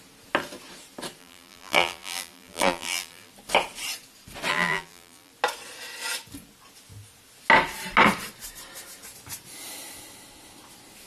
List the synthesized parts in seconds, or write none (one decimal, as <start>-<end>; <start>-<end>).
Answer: 1.2-3.3; 4.5-5.3